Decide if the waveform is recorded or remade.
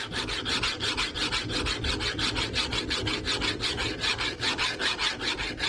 recorded